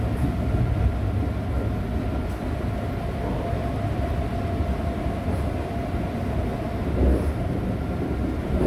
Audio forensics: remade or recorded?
recorded